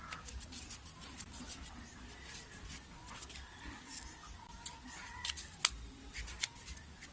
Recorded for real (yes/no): yes